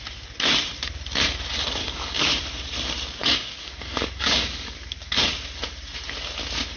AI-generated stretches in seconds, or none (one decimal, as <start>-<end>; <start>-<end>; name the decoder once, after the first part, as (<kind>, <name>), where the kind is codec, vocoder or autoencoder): 1.8-2.4 (codec, DAC); 3.2-5.3